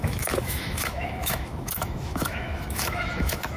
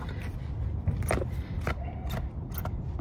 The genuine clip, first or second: second